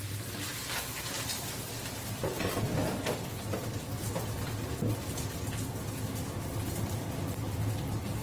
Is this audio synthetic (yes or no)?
no